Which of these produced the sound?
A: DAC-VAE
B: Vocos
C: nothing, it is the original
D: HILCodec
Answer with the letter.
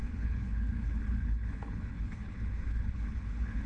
D